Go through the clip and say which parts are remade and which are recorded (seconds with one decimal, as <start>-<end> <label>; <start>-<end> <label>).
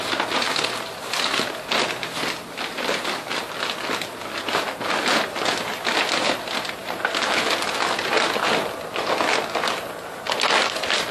0.0-11.1 recorded